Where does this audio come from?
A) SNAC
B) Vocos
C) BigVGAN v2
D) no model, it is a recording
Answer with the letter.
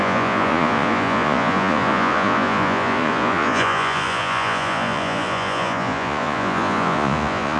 B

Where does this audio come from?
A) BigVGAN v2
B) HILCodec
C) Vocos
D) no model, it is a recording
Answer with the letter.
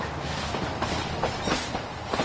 D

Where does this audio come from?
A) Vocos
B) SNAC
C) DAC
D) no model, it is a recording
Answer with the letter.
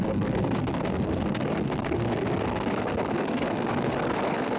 B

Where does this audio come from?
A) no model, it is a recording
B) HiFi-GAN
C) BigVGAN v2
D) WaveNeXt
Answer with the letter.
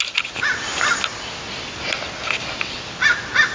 A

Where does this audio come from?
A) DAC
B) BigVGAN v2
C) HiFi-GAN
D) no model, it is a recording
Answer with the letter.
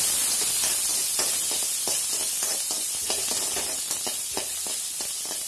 D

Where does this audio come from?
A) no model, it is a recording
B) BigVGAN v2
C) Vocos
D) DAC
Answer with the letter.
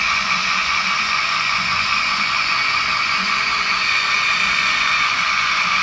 C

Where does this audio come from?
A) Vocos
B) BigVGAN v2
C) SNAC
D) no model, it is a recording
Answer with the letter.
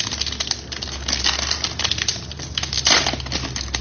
D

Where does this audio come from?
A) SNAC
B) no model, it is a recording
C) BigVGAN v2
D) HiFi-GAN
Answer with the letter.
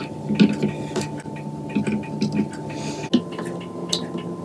B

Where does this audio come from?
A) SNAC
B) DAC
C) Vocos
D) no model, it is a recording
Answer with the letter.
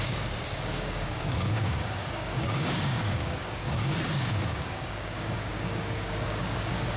B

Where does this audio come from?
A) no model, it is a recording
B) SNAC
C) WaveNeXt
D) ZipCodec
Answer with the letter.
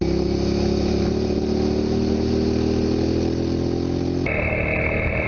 A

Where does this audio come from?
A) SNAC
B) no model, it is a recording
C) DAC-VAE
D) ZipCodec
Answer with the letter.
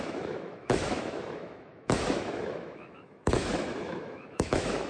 C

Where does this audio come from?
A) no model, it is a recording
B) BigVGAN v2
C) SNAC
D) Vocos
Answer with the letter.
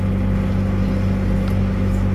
A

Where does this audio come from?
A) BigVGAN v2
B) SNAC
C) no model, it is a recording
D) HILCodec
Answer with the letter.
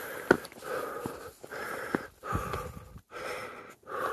C